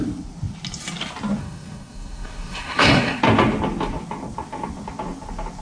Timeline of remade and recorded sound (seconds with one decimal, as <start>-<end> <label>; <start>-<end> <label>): 0.0-1.4 recorded; 1.4-3.2 remade; 3.2-5.6 recorded